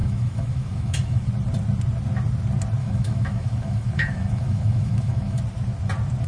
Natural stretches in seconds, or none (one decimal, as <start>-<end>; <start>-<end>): 1.3-2.8; 5.4-6.3